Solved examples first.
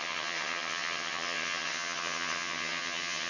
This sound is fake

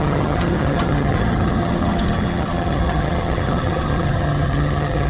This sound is fake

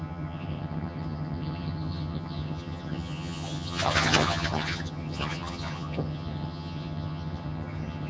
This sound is fake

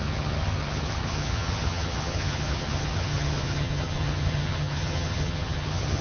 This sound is fake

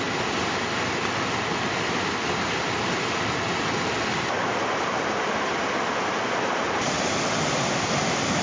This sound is real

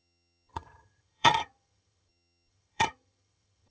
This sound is fake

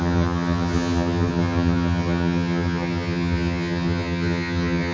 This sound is fake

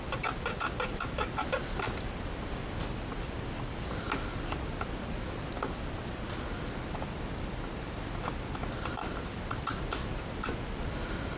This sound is real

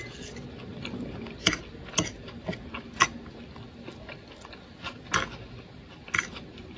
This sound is real